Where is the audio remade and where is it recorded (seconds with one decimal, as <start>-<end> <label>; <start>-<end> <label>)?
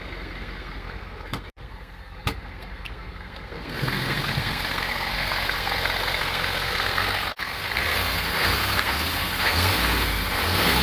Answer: 0.0-10.8 remade